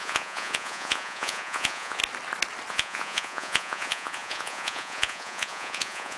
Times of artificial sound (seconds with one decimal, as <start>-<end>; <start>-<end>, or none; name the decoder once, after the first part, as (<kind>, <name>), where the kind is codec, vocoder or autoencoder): 0.0-2.0 (vocoder, Vocos); 2.7-6.2